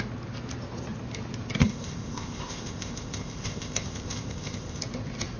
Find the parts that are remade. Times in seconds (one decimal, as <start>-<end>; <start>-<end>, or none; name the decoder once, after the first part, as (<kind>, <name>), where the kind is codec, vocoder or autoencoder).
1.6-4.8 (codec, ZipCodec)